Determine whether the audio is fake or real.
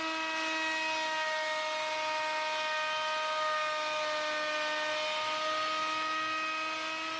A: real